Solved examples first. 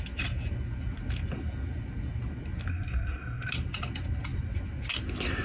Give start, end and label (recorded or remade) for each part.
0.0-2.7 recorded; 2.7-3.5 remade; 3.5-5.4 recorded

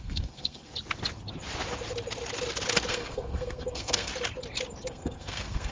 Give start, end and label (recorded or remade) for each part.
0.0-0.7 remade; 0.7-2.9 recorded; 2.9-4.1 remade; 4.1-4.9 recorded; 4.9-5.7 remade

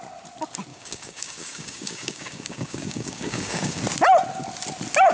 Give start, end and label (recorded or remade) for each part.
0.0-0.7 recorded; 0.7-3.8 remade; 3.8-5.1 recorded

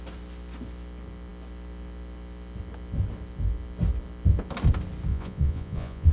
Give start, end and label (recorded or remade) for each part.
0.0-5.1 recorded; 5.1-6.1 remade